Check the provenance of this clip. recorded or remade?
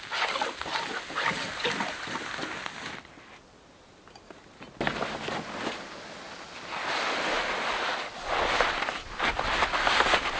recorded